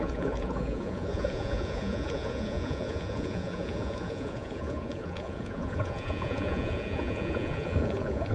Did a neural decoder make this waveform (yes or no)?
yes